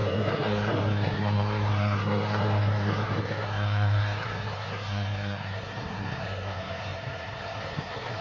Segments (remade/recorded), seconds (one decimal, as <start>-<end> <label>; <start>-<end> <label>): 0.0-8.2 remade